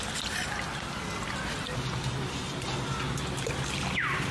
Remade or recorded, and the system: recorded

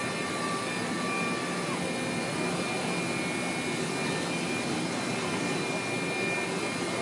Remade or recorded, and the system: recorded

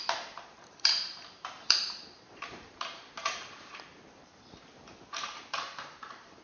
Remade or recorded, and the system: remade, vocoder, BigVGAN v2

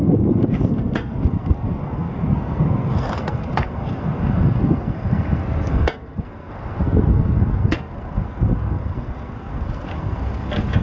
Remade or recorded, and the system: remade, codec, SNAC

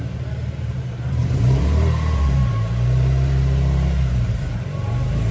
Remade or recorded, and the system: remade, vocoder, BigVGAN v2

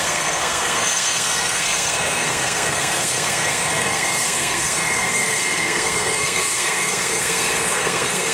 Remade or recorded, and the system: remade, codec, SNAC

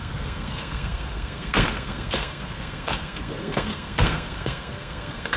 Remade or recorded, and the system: remade, codec, SNAC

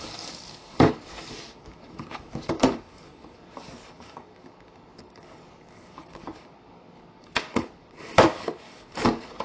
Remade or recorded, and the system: remade, codec, DAC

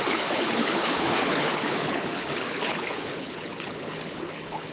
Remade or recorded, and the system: remade, codec, HILCodec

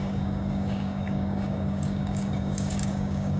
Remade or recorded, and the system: remade, codec, DAC